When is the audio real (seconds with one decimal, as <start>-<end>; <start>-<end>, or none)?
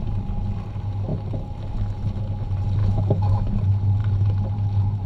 0.0-2.8; 3.5-5.1